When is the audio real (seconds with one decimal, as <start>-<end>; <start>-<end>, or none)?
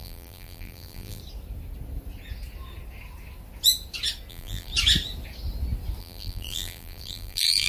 1.2-4.3; 4.7-6.0